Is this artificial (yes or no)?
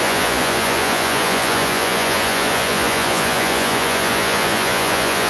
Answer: yes